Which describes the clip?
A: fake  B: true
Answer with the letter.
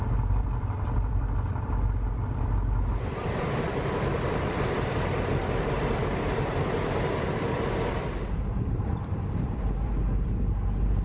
A